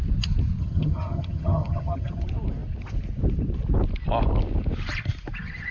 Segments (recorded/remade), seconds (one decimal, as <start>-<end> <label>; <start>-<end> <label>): 0.0-0.6 recorded; 0.6-2.2 remade; 2.2-5.7 recorded